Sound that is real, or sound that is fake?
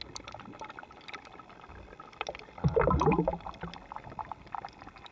real